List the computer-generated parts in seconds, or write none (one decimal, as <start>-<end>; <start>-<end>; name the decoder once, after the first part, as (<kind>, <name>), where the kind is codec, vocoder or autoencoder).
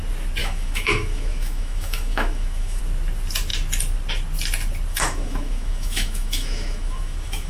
0.4-2.8 (autoencoder, DAC-VAE); 4.9-7.5